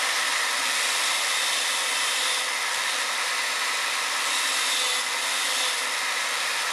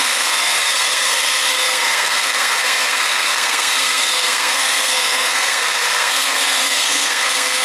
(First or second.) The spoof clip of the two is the second